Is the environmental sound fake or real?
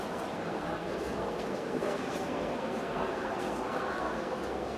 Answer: fake